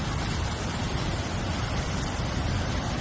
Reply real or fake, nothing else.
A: fake